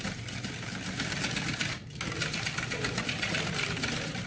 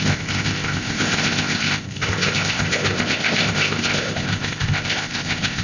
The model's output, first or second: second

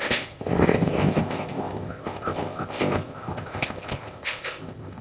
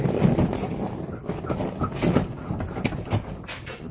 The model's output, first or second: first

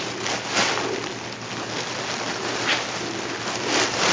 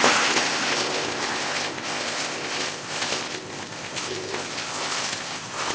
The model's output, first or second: second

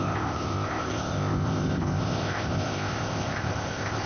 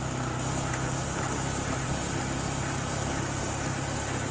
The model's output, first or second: first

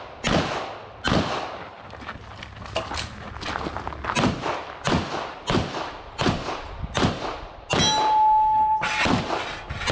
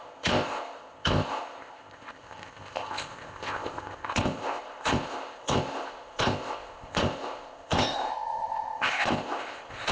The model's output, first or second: second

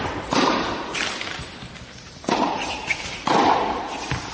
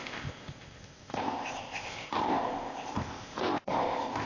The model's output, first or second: second